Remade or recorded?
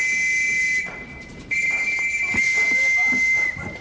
recorded